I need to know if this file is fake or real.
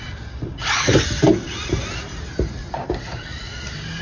real